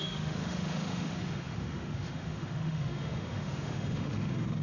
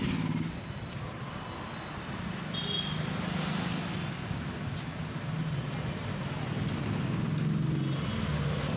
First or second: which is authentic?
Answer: second